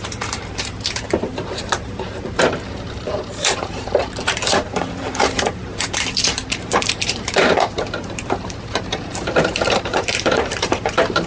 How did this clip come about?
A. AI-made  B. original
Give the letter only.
A